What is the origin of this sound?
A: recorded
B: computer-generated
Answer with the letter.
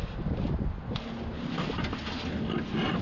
A